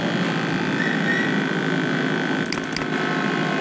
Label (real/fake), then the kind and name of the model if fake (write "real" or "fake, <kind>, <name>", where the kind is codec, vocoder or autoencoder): real